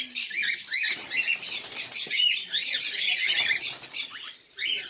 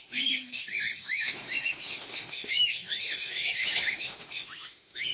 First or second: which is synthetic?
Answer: second